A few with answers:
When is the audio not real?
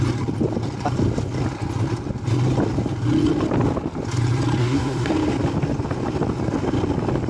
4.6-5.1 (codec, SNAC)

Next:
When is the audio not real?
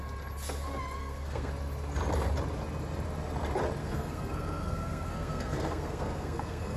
1.0-1.5 (codec, SNAC); 3.8-6.8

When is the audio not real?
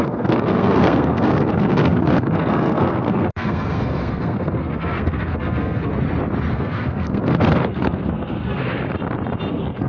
0.0-5.9 (codec, SNAC); 6.5-8.8; 9.5-9.9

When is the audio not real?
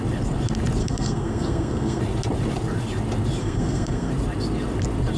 0.8-2.0 (codec, SNAC); 3.4-4.1